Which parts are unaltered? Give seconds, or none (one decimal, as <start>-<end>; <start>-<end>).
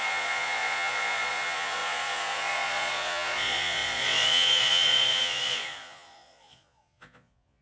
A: none